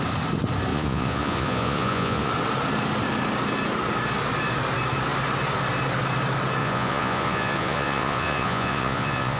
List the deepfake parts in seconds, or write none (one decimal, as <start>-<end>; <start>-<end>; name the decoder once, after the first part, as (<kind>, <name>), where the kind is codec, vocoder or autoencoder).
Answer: 0.7-2.3 (vocoder, Vocos); 6.6-9.4